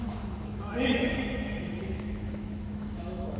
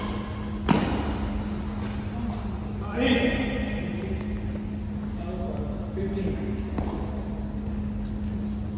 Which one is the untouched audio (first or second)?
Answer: second